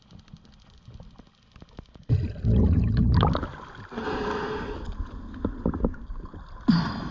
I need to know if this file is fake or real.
real